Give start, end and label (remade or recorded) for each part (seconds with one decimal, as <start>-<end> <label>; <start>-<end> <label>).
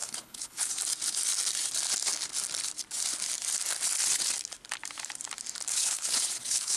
0.0-0.7 remade; 0.7-5.7 recorded; 5.7-6.8 remade